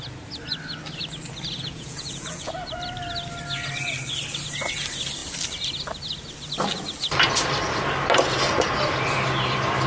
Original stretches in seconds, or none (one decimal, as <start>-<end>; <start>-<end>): 0.0-1.7; 2.5-9.9